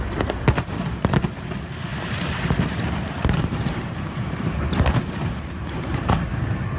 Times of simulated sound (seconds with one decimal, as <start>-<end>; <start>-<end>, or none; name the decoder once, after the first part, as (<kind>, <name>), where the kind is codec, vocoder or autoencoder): 1.9-6.0 (vocoder, BigVGAN v2)